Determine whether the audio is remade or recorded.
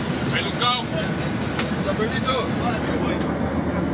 recorded